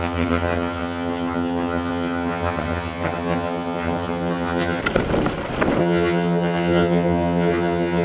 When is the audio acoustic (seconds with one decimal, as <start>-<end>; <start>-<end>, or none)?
4.8-5.8